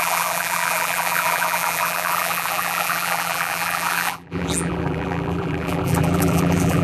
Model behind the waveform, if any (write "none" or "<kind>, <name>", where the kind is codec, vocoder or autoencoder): vocoder, BigVGAN v2